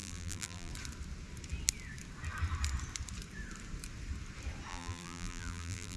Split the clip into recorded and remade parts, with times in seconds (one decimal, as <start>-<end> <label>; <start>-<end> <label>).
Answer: 0.0-0.7 remade; 0.7-4.7 recorded; 4.7-6.0 remade